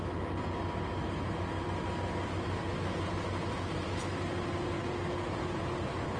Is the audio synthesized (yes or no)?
no